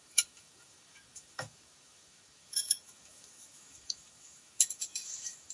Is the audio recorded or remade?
remade